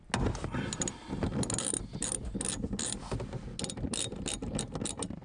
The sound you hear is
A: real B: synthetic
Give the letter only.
A